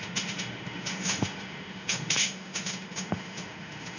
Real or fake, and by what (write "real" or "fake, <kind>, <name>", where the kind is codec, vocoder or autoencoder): fake, autoencoder, DAC-VAE